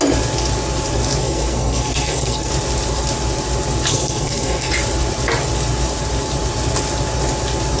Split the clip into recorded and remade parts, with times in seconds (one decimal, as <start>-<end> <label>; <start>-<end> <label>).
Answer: 0.0-1.2 recorded; 1.2-2.5 remade; 2.5-3.9 recorded; 3.9-4.7 remade; 4.7-7.8 recorded